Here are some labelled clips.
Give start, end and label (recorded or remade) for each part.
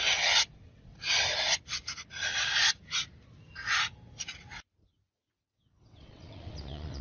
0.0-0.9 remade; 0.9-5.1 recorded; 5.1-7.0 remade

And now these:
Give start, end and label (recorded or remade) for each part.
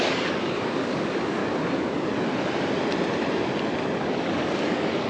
0.0-1.4 remade; 1.4-4.0 recorded; 4.0-5.1 remade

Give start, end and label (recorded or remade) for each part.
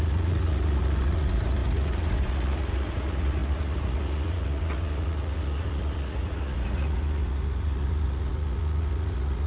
0.0-9.5 remade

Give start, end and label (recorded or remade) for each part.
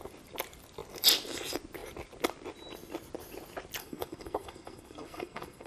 0.0-3.8 recorded; 3.8-5.7 remade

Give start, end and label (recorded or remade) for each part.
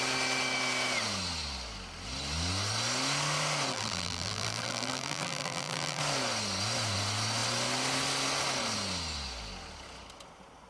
0.0-3.7 recorded; 3.7-6.0 remade; 6.0-10.7 recorded